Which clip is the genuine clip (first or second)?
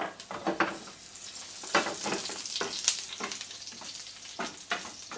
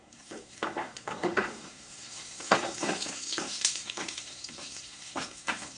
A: first